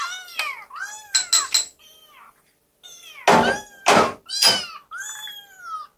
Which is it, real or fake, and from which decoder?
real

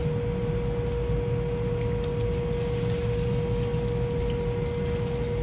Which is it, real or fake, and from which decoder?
real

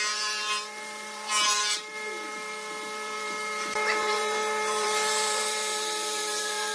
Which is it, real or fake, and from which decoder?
fake, vocoder, BigVGAN v2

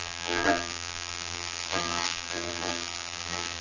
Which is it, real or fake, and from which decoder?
fake, vocoder, BigVGAN v2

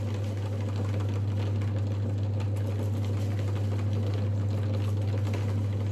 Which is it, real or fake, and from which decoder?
real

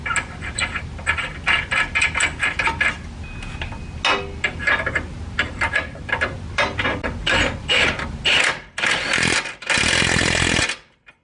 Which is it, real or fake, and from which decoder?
real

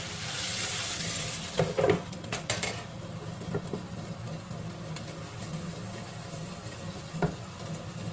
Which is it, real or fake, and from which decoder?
real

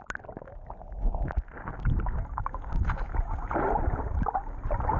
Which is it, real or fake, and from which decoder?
real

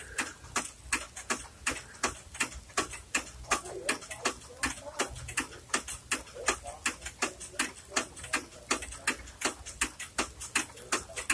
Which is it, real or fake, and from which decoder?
real